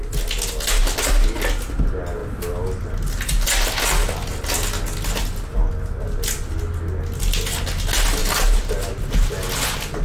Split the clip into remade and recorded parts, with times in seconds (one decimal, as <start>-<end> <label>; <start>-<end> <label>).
0.0-8.2 recorded; 8.2-8.7 remade; 8.7-10.0 recorded